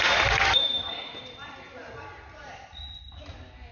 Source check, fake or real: real